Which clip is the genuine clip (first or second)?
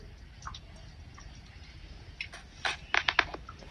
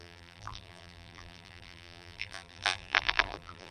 first